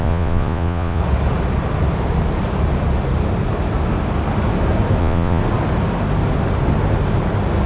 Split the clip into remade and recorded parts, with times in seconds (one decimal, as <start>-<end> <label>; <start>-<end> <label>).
0.0-1.0 remade; 1.0-5.0 recorded; 5.0-5.4 remade; 5.4-7.7 recorded